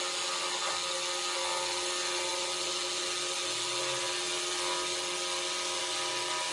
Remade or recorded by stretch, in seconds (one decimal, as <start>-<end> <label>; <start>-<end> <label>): 0.0-6.5 recorded